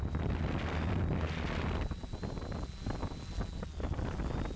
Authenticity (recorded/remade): recorded